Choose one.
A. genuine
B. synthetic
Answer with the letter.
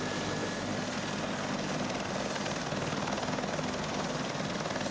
A